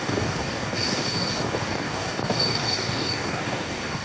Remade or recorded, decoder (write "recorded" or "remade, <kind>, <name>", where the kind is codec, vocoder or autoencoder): remade, codec, DAC